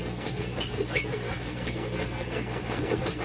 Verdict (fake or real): fake